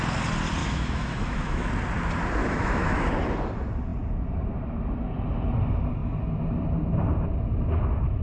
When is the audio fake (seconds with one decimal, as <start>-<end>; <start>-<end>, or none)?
0.6-1.7; 2.4-3.1